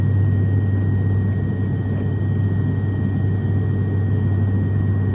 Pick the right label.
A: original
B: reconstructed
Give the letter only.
A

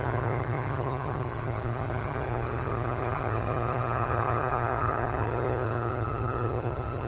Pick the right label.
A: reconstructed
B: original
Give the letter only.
A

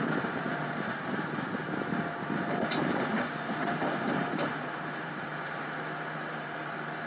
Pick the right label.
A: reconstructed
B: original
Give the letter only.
A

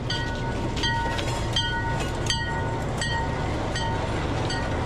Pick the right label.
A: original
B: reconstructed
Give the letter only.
A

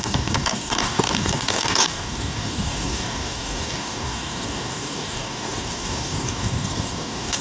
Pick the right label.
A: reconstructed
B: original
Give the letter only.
A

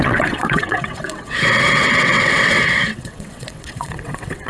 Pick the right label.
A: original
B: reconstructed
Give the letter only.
B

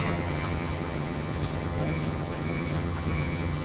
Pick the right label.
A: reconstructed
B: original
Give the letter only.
A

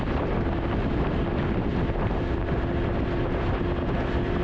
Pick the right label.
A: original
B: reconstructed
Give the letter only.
A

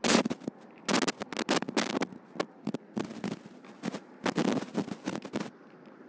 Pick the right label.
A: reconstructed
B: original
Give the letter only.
B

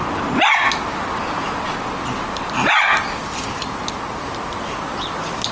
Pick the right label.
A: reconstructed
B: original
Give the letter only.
B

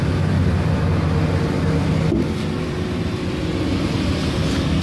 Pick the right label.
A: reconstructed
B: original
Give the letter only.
B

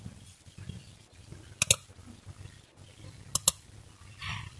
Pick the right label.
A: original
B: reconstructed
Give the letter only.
A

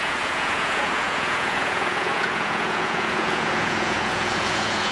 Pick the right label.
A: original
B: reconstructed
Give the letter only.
B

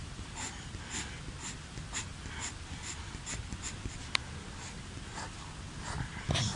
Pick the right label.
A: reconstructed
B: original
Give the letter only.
B